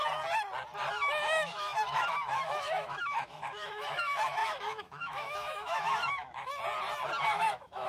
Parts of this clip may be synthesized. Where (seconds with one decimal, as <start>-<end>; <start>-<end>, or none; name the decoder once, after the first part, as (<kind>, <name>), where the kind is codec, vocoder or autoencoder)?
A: 0.9-6.5 (autoencoder, DAC-VAE); 7.2-7.9

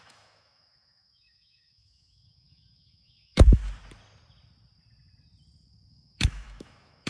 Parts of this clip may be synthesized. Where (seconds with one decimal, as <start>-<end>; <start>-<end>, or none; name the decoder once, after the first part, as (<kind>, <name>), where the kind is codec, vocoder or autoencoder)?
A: 0.0-3.6 (autoencoder, DAC-VAE); 5.9-7.1